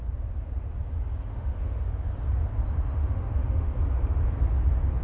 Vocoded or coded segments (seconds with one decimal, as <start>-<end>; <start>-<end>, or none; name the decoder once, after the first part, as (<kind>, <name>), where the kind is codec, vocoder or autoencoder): 1.3-1.9 (autoencoder, DAC-VAE); 3.0-3.7